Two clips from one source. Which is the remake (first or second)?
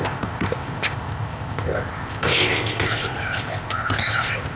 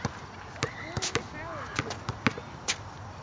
first